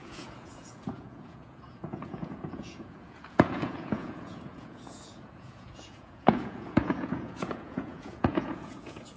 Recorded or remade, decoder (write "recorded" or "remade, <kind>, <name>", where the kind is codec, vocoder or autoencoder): remade, vocoder, Vocos